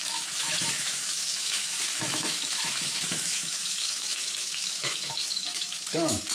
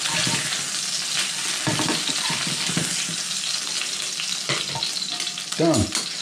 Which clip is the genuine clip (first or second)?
second